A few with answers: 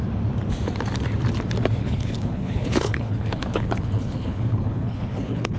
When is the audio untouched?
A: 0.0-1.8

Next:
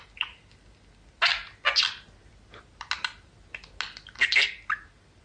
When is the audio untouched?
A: 0.0-5.2